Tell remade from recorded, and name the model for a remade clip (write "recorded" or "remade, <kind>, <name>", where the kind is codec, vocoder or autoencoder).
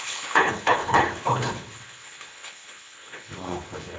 remade, codec, HILCodec